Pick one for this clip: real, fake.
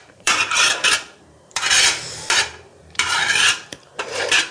fake